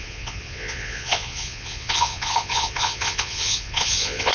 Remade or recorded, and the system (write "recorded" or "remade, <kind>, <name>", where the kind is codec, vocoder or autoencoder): remade, vocoder, Vocos